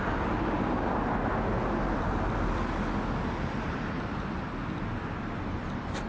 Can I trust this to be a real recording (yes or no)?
yes